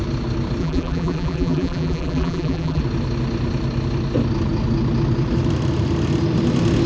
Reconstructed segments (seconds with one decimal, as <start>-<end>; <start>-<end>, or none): 0.6-2.8